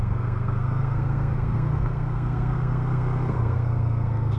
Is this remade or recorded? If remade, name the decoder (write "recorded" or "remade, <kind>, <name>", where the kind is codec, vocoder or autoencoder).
remade, codec, SNAC